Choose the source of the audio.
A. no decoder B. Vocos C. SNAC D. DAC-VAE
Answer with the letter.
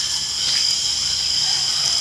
A